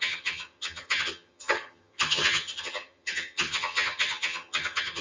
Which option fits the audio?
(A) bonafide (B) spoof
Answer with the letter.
B